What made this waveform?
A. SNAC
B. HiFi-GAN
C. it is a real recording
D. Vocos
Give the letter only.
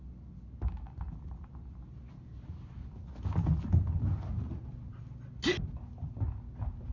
C